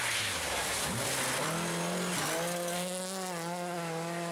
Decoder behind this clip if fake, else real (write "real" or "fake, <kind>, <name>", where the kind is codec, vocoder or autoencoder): real